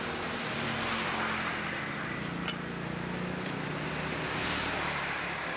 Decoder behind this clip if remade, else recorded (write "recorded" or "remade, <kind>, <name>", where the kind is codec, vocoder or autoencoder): recorded